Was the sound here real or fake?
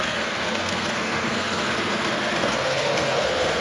fake